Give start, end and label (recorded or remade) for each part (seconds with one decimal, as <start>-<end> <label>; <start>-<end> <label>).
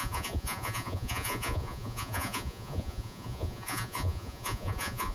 0.0-5.1 remade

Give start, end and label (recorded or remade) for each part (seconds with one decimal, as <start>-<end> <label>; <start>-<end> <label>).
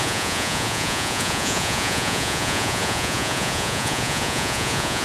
0.0-5.0 remade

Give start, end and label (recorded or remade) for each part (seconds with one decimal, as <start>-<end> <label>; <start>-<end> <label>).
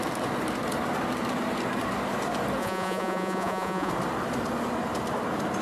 0.0-2.6 recorded; 2.6-3.9 remade; 3.9-5.6 recorded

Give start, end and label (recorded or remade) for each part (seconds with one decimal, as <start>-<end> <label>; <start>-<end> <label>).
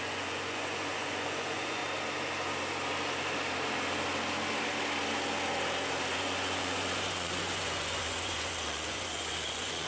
0.0-1.8 remade; 1.8-6.2 recorded; 6.2-9.9 remade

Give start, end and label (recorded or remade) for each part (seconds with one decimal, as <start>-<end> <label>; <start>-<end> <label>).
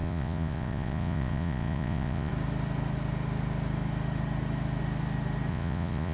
0.0-2.3 remade; 2.3-5.5 recorded; 5.5-6.1 remade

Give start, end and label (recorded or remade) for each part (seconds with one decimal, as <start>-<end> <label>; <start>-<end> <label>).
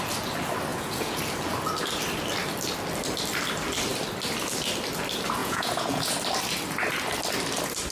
0.0-0.7 recorded; 0.7-1.2 remade; 1.2-5.4 recorded; 5.4-6.1 remade; 6.1-7.9 recorded